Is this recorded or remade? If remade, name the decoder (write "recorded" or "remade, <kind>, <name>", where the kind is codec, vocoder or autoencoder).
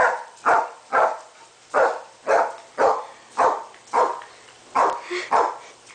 remade, vocoder, BigVGAN v2